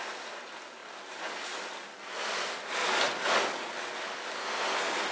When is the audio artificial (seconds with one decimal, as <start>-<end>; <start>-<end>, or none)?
4.4-5.1